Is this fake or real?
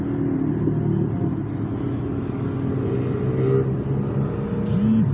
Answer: real